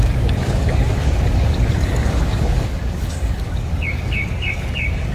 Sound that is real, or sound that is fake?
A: fake